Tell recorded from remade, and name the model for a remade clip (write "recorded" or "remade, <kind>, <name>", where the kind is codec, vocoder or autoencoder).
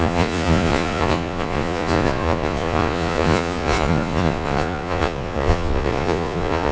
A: remade, vocoder, Vocos